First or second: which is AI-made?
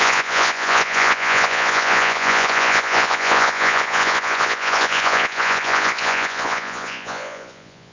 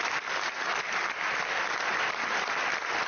first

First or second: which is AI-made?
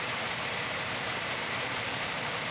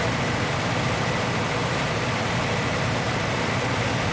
first